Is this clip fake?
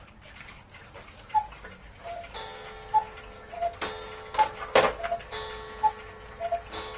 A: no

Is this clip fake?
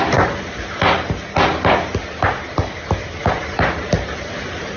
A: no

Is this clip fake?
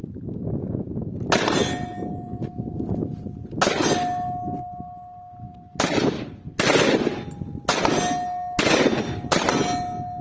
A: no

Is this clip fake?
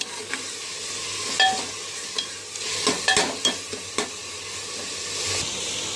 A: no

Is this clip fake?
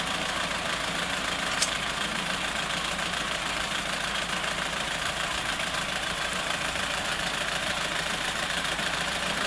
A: yes